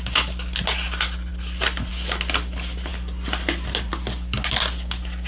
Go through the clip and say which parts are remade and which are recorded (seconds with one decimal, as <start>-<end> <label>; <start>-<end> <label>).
0.0-5.3 recorded